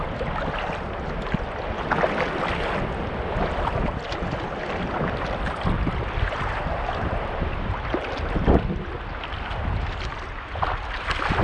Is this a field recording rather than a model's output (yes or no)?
yes